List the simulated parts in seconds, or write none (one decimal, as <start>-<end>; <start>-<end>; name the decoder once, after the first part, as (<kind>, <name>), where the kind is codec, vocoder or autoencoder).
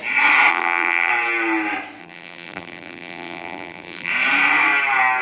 0.5-1.1 (vocoder, BigVGAN v2); 2.0-4.1